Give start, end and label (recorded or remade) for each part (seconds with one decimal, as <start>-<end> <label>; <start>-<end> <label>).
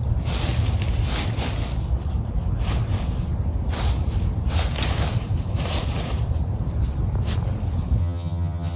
0.0-8.0 recorded; 8.0-8.8 remade